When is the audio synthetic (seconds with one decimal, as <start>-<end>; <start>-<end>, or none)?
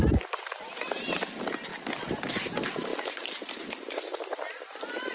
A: 0.0-1.7; 2.2-5.1